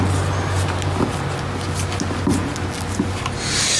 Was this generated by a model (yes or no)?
no